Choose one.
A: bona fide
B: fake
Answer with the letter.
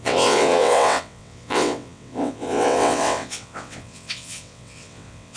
B